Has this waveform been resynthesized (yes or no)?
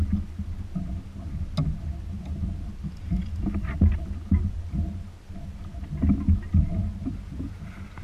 no